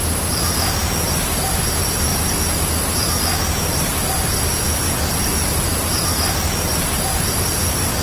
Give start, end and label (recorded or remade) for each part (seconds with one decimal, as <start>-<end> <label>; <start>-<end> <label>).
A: 0.0-2.1 remade; 2.1-5.1 recorded; 5.1-8.0 remade